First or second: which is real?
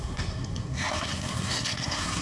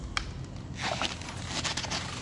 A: second